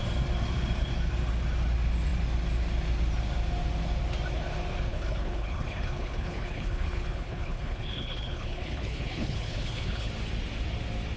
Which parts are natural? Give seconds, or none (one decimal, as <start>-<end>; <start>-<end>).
0.0-4.9; 10.1-11.2